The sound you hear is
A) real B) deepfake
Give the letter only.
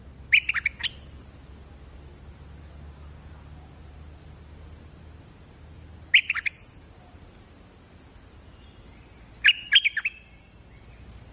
A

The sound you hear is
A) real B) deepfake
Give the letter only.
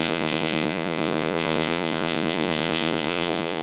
B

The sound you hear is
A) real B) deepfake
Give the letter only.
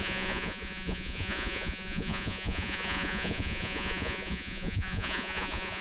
B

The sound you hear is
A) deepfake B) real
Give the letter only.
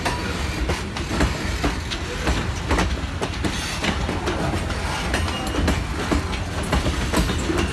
B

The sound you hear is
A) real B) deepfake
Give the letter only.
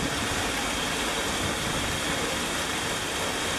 A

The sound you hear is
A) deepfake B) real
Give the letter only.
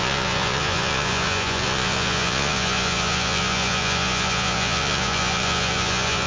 A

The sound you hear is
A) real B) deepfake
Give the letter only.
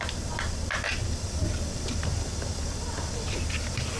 A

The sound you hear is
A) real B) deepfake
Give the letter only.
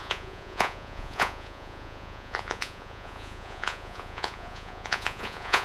B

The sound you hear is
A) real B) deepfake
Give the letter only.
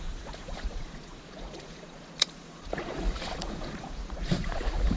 B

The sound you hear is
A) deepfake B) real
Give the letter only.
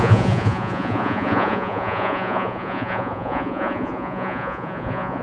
A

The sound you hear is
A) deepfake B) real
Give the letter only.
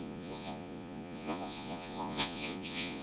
A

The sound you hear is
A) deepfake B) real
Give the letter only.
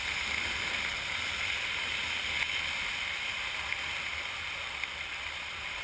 B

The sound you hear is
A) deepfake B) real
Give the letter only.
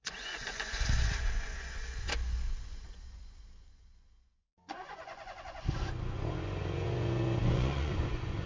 A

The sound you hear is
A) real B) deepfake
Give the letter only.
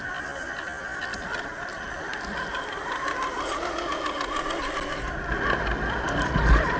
A